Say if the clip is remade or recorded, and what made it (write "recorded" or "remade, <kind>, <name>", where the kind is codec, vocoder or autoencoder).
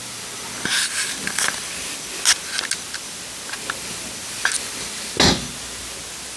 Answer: recorded